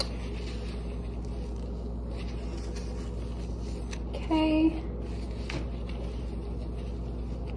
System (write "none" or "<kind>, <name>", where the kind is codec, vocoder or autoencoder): none